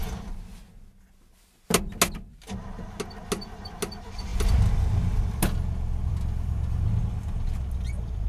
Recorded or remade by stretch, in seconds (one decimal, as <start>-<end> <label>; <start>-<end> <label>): 0.0-8.3 recorded